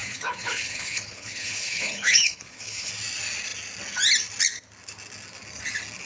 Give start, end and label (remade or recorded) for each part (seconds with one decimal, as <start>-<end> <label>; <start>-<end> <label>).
0.0-2.9 remade; 2.9-6.1 recorded